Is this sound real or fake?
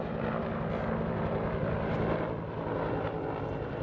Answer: real